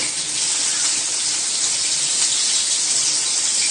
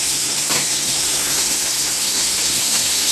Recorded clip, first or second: first